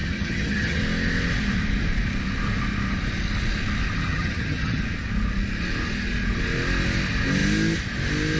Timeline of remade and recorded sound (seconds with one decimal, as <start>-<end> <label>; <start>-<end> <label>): 0.0-0.8 remade; 0.8-4.0 recorded; 4.0-4.8 remade; 4.8-8.4 recorded